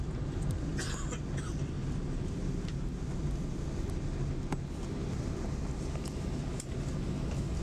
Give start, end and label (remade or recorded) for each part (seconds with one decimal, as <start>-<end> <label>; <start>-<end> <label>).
0.0-7.6 recorded